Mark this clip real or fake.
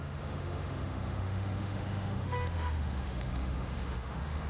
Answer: fake